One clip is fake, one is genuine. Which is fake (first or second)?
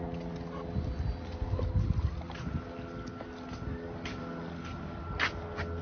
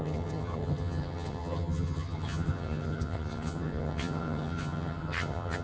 second